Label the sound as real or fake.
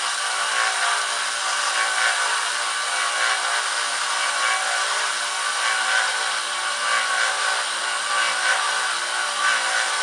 real